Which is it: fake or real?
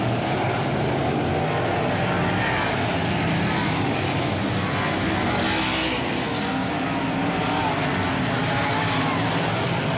real